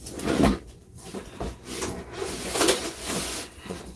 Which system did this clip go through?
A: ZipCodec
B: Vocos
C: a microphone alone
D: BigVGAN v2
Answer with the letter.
B